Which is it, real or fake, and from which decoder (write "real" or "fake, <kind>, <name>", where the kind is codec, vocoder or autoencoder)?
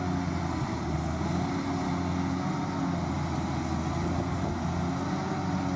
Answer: real